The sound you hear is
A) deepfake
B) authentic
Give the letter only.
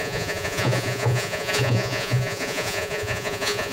A